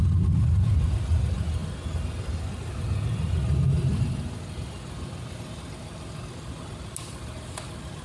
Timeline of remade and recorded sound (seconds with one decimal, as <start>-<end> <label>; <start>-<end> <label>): 0.0-8.0 recorded

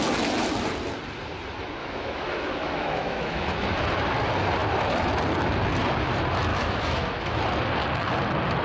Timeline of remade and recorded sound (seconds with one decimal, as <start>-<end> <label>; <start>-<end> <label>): 0.0-1.8 recorded; 1.8-3.5 remade; 3.5-6.5 recorded; 6.5-7.4 remade; 7.4-8.6 recorded

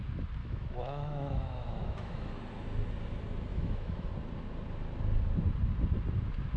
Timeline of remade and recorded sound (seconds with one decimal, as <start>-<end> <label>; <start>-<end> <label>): 0.0-0.4 recorded; 0.4-2.3 remade; 2.3-3.5 recorded; 3.5-4.1 remade; 4.1-6.6 recorded

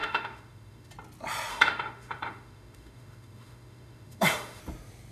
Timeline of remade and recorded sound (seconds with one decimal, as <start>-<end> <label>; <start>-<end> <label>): 0.0-0.9 remade; 0.9-1.5 recorded; 1.5-4.6 remade; 4.6-5.1 recorded

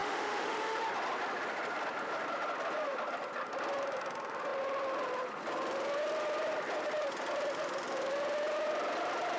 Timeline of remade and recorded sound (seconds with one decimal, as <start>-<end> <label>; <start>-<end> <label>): 0.0-0.8 remade; 0.8-9.4 recorded

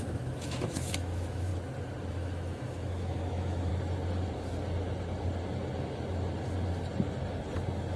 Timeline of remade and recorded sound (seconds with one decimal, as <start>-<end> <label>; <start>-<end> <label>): 0.0-1.5 remade; 1.5-2.1 recorded; 2.1-3.7 remade; 3.7-8.0 recorded

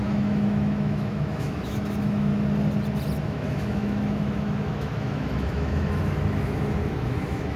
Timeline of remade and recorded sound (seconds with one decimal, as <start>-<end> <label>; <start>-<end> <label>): 0.0-2.3 remade; 2.3-3.2 recorded; 3.2-7.6 remade

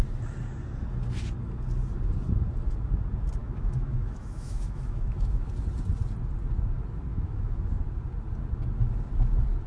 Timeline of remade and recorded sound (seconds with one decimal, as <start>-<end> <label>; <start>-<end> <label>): 0.0-3.4 recorded; 3.4-5.5 remade; 5.5-7.1 recorded; 7.1-7.8 remade; 7.8-9.7 recorded